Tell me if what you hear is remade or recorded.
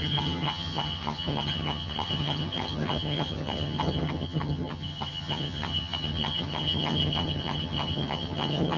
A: remade